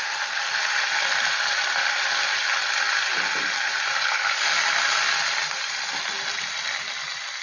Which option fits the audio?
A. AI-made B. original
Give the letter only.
B